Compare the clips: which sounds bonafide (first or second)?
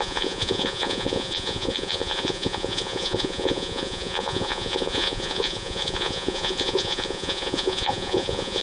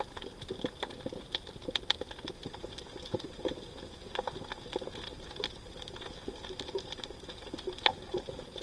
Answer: second